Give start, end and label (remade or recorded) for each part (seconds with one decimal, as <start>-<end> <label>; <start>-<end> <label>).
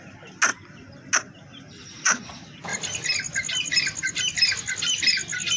0.0-5.6 recorded